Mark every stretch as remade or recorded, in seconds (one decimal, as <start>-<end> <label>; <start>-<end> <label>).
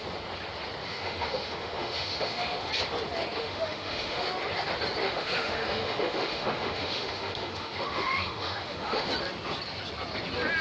0.0-0.8 recorded; 0.8-2.7 remade; 2.7-3.4 recorded; 3.4-4.4 remade; 4.4-5.0 recorded; 5.0-9.1 remade; 9.1-10.6 recorded